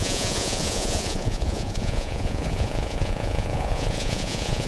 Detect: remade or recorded remade